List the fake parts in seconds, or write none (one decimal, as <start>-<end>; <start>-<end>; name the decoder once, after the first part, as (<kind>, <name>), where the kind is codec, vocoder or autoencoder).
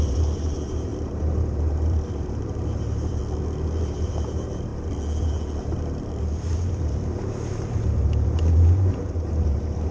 0.0-3.2 (vocoder, BigVGAN v2); 3.8-4.7; 5.6-9.9